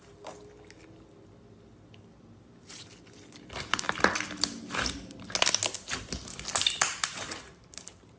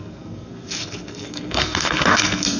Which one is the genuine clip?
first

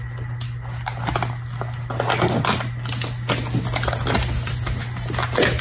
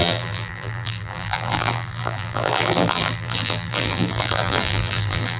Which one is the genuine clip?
first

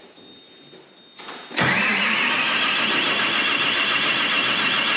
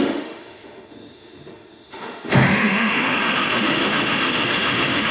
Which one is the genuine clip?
first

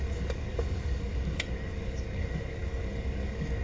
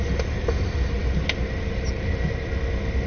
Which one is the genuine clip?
second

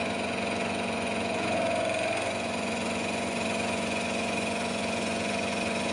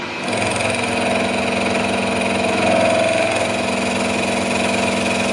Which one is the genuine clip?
second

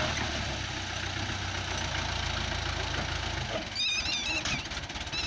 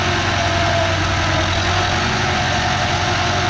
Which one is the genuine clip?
first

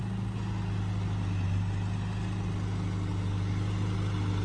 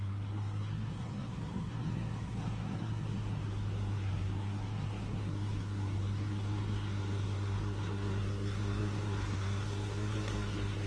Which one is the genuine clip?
first